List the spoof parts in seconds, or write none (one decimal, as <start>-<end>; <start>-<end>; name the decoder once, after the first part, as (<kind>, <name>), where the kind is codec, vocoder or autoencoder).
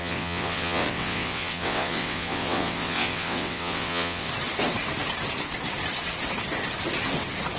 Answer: 0.0-4.3 (vocoder, WaveNeXt)